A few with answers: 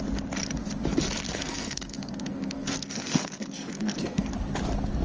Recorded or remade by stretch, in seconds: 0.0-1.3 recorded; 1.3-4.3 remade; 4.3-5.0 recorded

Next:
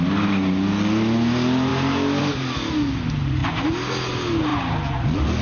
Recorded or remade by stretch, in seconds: 0.0-5.4 recorded

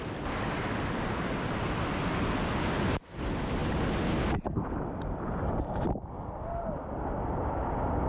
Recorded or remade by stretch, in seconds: 0.0-8.1 recorded

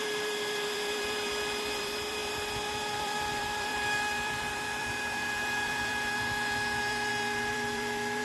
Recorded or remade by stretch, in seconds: 0.0-8.2 remade

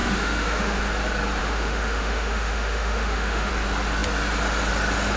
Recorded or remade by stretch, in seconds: 0.0-0.8 remade; 0.8-1.4 recorded; 1.4-3.5 remade; 3.5-5.2 recorded